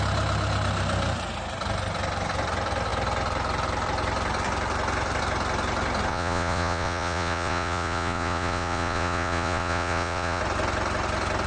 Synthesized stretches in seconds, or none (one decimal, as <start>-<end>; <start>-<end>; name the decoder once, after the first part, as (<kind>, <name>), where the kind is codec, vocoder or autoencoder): 6.1-10.4 (vocoder, Vocos)